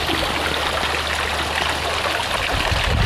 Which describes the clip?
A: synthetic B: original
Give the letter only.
B